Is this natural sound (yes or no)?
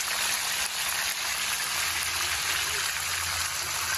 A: yes